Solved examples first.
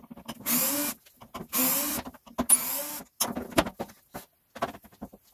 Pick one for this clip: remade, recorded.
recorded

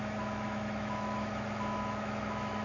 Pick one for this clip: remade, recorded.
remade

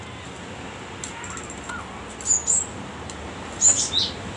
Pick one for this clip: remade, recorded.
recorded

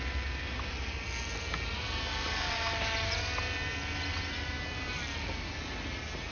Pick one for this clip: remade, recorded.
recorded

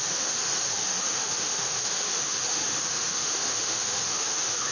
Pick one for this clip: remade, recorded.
remade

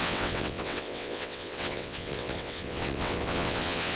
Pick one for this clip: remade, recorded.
remade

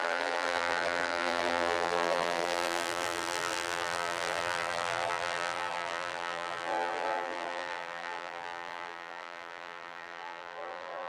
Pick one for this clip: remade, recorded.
remade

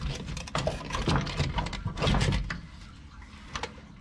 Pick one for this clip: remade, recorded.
recorded